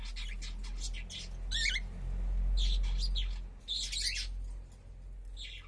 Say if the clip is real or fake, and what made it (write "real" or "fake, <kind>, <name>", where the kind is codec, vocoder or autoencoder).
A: real